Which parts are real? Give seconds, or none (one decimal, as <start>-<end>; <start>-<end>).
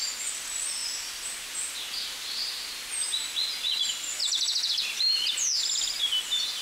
0.0-6.6